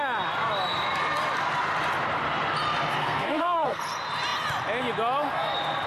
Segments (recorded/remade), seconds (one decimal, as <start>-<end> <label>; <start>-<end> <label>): 0.0-3.0 recorded; 3.0-3.8 remade; 3.8-5.9 recorded